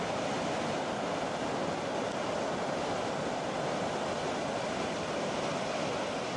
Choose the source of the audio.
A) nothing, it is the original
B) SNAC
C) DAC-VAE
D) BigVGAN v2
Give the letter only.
A